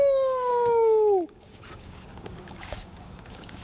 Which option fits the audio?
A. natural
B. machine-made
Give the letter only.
B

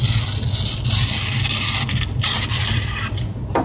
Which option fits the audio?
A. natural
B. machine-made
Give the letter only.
A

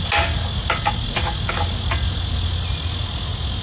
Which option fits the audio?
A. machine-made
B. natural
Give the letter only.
B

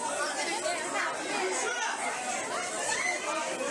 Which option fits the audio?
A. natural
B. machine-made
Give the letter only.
A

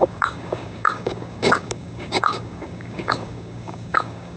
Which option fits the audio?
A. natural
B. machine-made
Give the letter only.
B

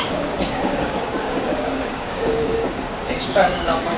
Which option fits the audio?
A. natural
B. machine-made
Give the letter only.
B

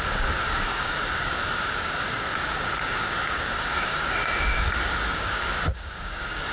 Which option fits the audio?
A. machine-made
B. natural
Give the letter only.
A